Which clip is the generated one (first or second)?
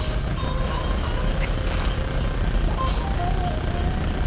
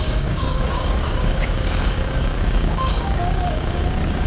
second